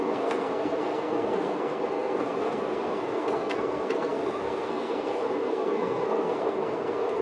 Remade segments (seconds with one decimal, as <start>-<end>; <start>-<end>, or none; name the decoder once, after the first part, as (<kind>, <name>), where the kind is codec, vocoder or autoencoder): 0.0-7.2 (codec, SNAC)